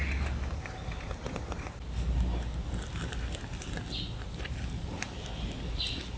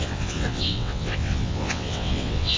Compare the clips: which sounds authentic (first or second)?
first